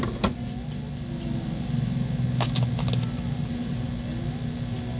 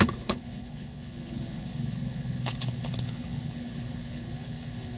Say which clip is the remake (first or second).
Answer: second